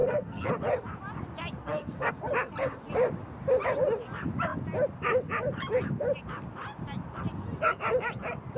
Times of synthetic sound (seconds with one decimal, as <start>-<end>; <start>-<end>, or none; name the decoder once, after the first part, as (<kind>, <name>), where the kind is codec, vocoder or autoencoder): 0.0-0.5 (codec, SNAC); 1.6-2.1